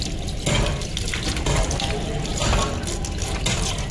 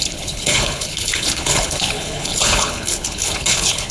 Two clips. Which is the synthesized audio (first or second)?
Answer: second